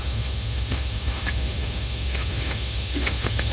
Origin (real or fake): fake